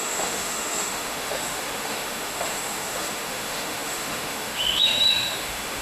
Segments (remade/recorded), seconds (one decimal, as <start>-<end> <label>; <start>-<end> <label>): 0.0-5.8 remade